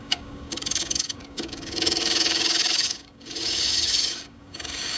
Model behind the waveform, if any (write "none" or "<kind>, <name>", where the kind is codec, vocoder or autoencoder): codec, DAC